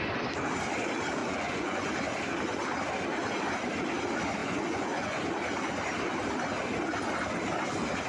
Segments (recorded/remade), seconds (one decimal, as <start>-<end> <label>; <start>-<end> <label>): 0.0-1.2 recorded; 1.2-1.9 remade; 1.9-4.4 recorded; 4.4-5.2 remade; 5.2-8.1 recorded